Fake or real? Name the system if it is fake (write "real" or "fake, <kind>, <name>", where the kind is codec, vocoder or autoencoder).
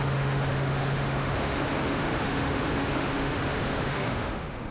fake, autoencoder, DAC-VAE